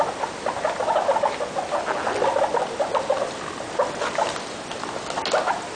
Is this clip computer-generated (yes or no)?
no